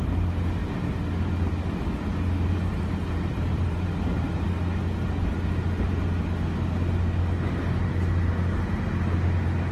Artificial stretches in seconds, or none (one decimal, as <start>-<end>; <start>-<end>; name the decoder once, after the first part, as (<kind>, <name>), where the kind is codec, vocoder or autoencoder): 2.4-4.2 (vocoder, BigVGAN v2)